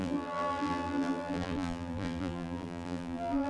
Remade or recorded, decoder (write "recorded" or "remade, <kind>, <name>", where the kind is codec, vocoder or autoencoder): remade, vocoder, BigVGAN v2